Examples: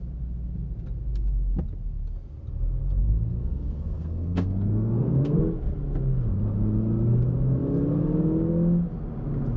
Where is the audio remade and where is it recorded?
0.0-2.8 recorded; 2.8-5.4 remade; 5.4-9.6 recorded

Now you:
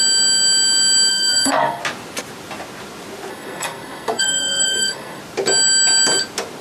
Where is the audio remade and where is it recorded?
0.0-1.1 recorded; 1.1-1.8 remade; 1.8-3.3 recorded; 3.3-5.2 remade; 5.2-6.6 recorded

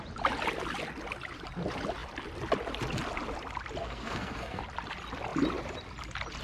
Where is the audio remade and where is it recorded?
0.0-3.8 recorded; 3.8-4.6 remade; 4.6-6.4 recorded

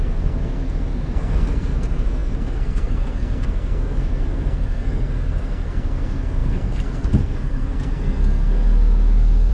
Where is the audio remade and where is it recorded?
0.0-9.5 remade

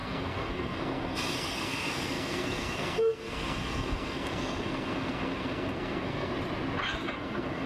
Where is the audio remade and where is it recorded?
0.0-6.3 remade; 6.3-6.8 recorded; 6.8-7.7 remade

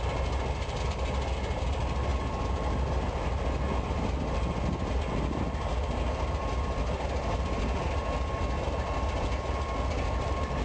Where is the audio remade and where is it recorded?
0.0-10.6 recorded